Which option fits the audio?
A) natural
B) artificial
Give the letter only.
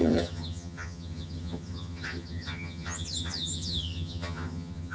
B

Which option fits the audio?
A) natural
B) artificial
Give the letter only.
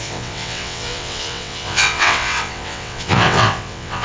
B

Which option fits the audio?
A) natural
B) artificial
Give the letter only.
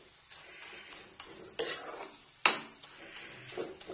A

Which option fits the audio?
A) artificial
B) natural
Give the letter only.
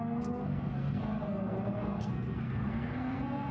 A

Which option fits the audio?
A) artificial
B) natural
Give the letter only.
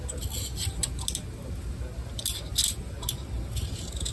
B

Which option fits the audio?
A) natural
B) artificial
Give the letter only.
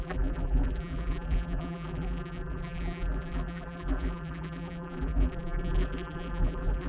B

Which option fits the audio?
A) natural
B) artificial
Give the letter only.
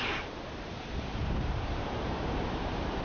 B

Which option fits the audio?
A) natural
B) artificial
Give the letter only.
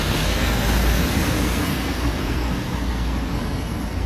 B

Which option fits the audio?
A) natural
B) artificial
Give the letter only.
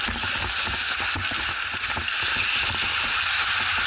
A